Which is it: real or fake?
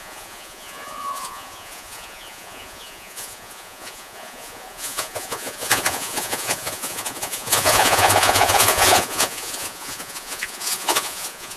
fake